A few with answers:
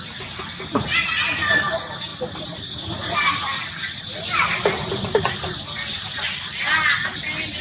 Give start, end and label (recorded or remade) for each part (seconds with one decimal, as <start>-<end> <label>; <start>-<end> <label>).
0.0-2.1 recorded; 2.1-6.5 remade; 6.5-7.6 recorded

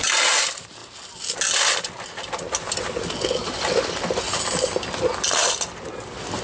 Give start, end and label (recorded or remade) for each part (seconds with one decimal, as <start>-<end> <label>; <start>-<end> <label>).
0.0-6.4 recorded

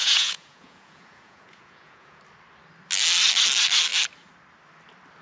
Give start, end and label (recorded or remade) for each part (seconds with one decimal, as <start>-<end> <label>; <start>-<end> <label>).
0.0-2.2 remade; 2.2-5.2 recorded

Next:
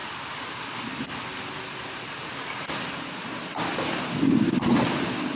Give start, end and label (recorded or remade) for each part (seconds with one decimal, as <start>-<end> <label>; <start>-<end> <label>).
0.0-5.4 recorded